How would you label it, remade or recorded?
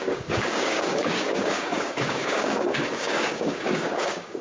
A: remade